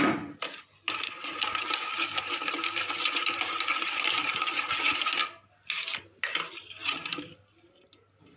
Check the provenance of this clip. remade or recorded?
recorded